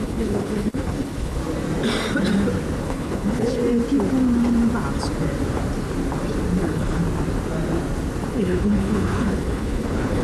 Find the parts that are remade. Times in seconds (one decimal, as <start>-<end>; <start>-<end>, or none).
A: 0.0-1.4; 2.8-3.6; 6.6-7.0; 8.3-10.2